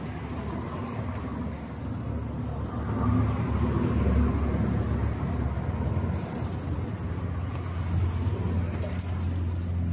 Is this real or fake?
real